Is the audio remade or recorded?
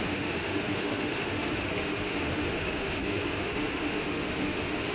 remade